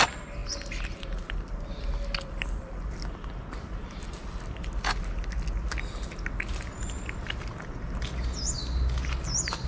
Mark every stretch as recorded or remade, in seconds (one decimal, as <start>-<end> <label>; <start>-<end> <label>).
0.0-9.7 recorded